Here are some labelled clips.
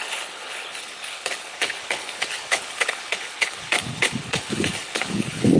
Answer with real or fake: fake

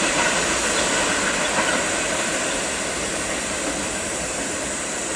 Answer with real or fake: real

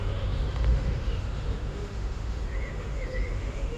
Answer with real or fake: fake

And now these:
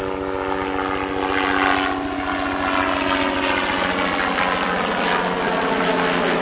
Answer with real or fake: real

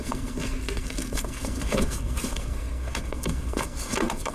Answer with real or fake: fake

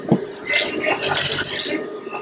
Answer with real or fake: real